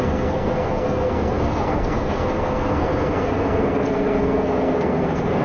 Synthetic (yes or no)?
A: yes